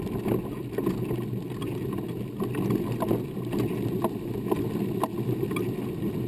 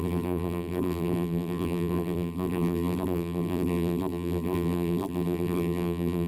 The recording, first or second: first